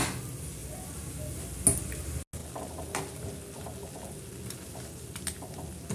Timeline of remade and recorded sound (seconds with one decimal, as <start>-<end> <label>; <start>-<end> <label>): 0.0-5.9 recorded